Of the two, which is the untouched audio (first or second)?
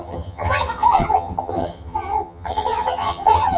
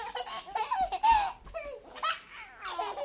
second